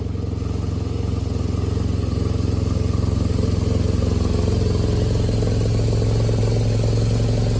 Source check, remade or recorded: recorded